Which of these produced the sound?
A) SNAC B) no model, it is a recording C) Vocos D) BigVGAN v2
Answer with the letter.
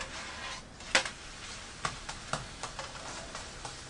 B